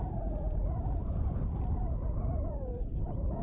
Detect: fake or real real